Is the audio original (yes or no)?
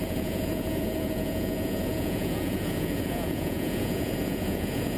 no